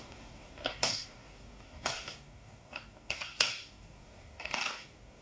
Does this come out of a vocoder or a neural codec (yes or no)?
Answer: yes